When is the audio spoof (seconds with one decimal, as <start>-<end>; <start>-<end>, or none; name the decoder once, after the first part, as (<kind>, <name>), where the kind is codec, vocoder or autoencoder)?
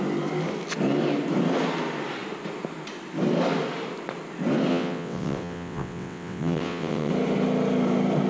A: 4.7-7.1 (vocoder, WaveNeXt)